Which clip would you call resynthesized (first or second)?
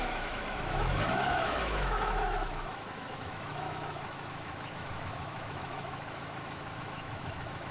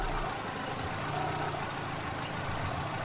first